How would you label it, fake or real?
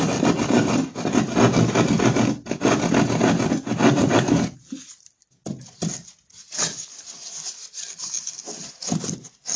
real